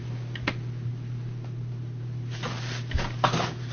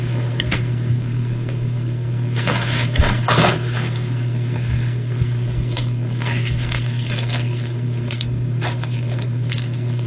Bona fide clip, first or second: first